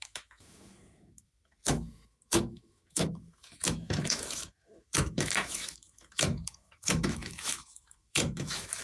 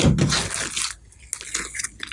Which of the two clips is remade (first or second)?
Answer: first